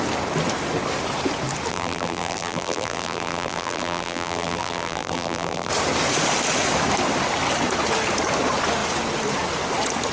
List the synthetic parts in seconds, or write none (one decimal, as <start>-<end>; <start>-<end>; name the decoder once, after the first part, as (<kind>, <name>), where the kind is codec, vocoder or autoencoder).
1.7-5.7 (vocoder, BigVGAN v2)

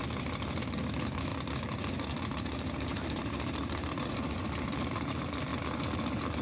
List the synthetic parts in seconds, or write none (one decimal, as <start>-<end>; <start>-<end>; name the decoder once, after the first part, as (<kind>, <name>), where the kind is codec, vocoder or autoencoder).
0.6-5.5 (vocoder, BigVGAN v2)

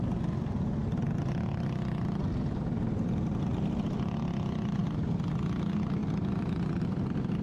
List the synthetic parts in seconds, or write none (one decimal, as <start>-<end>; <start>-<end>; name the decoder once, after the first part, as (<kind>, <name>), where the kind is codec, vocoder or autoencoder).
none

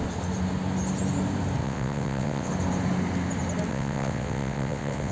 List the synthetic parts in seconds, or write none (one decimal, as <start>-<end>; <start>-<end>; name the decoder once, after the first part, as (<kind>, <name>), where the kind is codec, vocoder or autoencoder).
1.6-2.5 (vocoder, WaveNeXt); 3.7-5.1